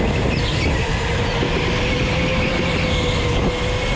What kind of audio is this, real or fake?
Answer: real